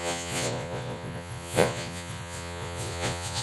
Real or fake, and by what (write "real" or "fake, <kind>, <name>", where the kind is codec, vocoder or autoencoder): fake, vocoder, Vocos